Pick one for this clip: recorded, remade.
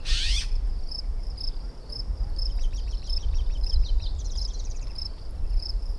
remade